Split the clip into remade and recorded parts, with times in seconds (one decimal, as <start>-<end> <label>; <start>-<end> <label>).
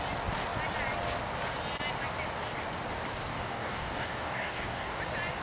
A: 0.0-3.3 recorded; 3.3-5.0 remade; 5.0-5.4 recorded